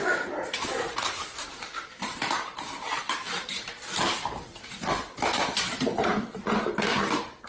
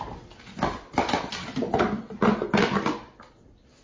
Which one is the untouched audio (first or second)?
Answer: second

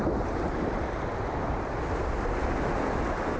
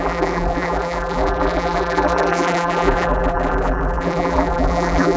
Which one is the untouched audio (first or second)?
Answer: first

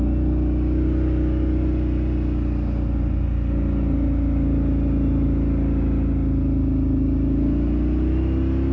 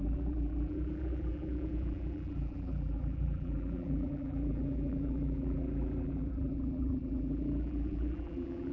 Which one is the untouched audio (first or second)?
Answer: first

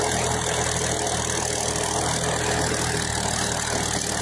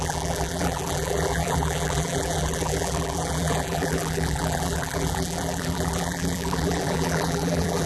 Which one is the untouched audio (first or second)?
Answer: first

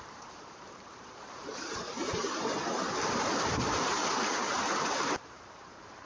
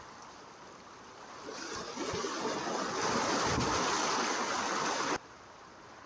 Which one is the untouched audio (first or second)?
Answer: second